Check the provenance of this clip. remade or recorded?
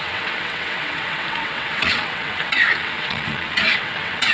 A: remade